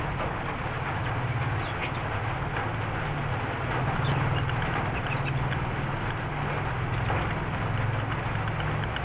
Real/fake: real